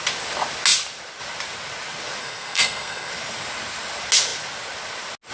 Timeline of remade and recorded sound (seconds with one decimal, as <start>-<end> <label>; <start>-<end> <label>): 0.0-2.2 recorded; 2.2-3.1 remade; 3.1-5.3 recorded